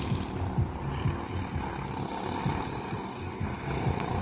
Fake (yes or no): no